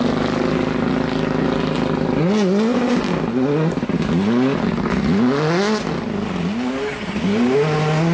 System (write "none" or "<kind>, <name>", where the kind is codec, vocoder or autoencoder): none